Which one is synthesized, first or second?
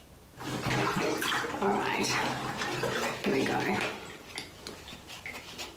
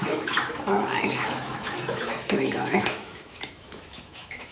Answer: second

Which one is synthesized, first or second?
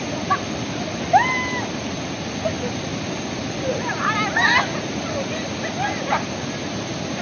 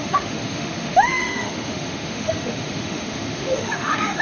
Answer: second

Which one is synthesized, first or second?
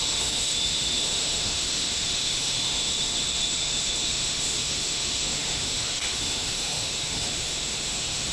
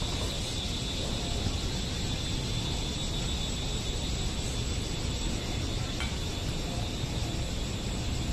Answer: first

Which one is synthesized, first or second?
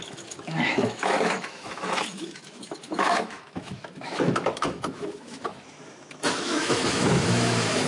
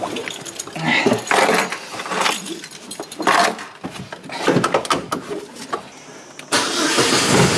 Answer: first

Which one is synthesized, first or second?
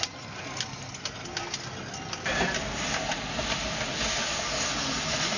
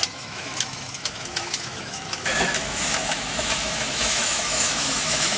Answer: second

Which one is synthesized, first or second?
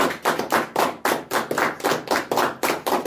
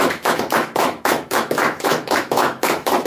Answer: second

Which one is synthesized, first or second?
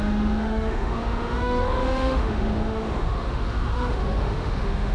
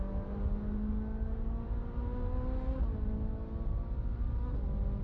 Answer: first